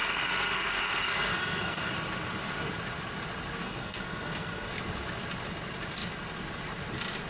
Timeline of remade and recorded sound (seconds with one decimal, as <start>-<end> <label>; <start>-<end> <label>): 0.0-1.9 remade; 1.9-3.6 recorded; 3.6-4.7 remade; 4.7-7.3 recorded